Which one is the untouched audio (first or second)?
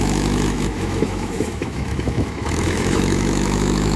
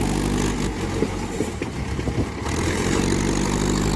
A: second